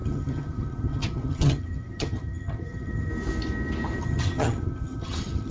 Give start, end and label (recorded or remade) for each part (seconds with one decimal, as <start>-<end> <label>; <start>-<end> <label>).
0.0-3.1 remade; 3.1-4.0 recorded; 4.0-5.5 remade